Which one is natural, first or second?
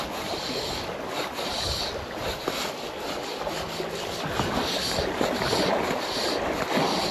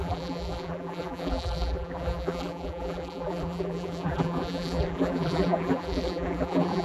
first